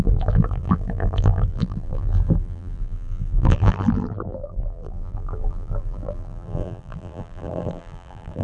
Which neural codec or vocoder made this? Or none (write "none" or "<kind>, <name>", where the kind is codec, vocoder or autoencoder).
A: vocoder, BigVGAN v2